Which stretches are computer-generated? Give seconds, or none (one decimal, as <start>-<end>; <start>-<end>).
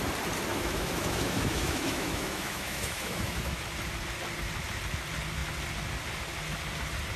0.5-3.6